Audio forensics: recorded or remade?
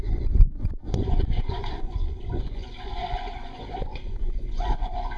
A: remade